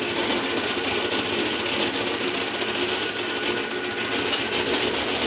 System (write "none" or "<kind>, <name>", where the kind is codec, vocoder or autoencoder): none